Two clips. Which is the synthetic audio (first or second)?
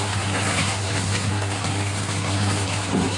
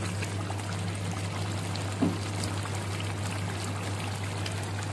first